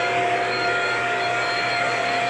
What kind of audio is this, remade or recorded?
remade